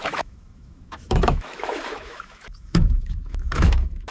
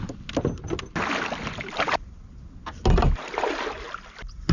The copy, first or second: first